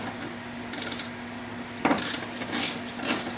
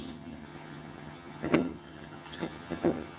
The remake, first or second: second